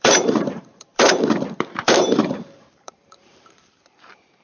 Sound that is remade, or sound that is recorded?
remade